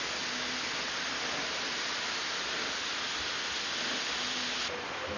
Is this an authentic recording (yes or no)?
yes